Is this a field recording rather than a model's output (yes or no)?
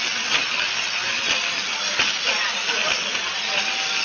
yes